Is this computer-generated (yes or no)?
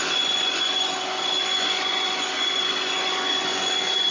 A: yes